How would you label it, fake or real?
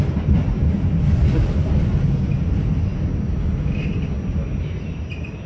real